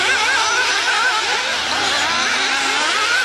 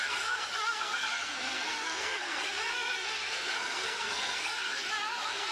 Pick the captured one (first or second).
first